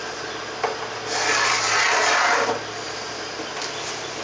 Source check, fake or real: real